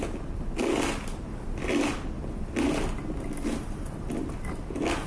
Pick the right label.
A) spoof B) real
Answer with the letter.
B